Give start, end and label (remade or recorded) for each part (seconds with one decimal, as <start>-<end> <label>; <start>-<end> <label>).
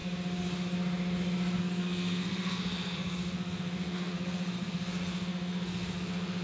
0.0-1.6 recorded; 1.6-6.4 remade